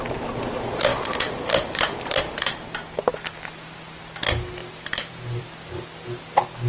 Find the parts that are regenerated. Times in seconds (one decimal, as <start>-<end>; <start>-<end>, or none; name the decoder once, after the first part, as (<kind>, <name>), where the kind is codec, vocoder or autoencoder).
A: 0.9-3.0 (vocoder, BigVGAN v2); 4.6-5.4